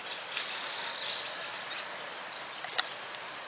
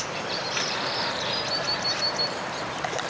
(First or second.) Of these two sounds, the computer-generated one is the second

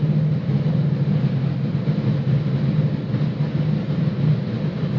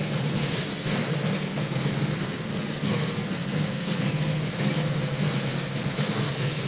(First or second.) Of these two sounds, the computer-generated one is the second